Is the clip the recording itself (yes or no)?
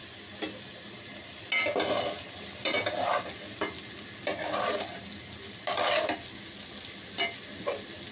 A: yes